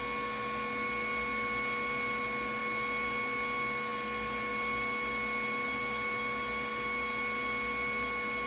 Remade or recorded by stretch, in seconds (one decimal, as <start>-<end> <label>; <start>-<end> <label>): 0.0-8.5 recorded